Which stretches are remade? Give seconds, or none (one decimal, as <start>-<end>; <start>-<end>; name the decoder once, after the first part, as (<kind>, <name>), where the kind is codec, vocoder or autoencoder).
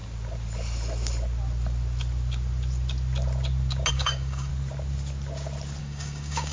3.9-4.5 (codec, DAC); 5.8-6.5